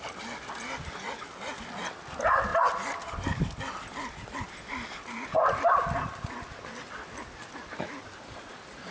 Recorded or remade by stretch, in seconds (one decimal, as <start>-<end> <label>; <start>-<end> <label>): 0.0-8.9 recorded